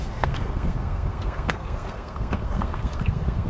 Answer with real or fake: fake